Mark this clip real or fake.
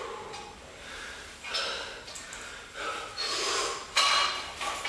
real